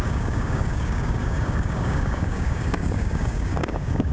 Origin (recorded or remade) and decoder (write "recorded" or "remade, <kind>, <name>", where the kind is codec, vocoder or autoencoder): remade, codec, DAC